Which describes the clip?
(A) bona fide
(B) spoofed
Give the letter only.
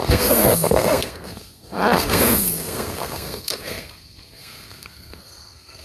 B